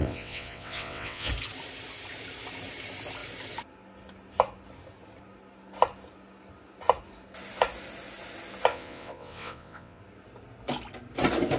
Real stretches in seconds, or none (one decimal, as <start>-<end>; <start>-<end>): 1.3-8.7; 10.0-11.6